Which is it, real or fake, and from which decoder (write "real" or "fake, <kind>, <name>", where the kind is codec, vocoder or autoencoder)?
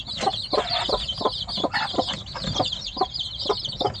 real